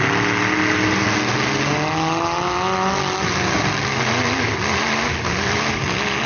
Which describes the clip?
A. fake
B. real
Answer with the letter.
B